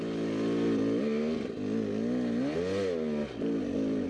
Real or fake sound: real